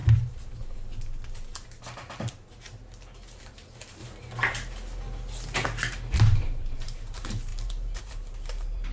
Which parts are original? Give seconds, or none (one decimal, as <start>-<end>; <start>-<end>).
0.0-3.4; 4.0-6.2